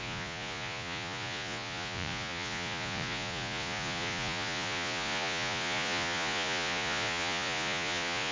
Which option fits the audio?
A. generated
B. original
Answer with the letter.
A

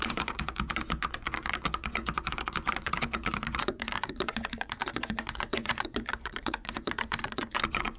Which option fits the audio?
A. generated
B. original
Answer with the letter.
A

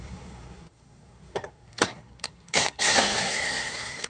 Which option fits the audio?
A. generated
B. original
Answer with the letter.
A